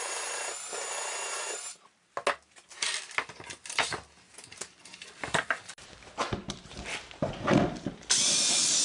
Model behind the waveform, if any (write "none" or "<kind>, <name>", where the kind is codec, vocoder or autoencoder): none